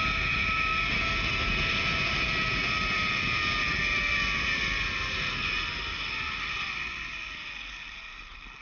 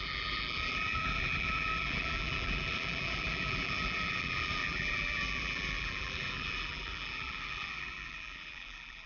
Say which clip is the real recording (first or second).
first